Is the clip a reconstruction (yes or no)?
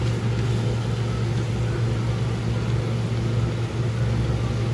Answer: no